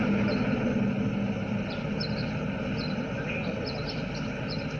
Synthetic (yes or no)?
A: no